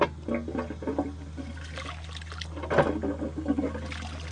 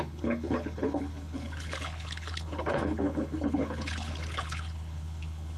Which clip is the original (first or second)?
first